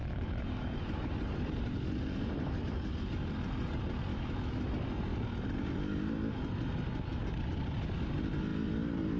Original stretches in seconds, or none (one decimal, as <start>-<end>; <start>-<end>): 1.1-4.1; 4.6-9.2